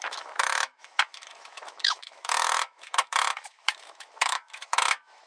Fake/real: fake